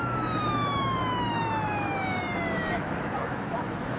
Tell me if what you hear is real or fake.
fake